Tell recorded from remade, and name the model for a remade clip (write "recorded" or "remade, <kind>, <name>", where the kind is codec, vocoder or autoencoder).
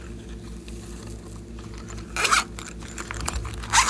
recorded